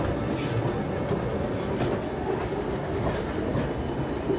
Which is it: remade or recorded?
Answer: recorded